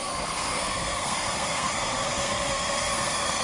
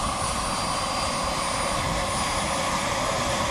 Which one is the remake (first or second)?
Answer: first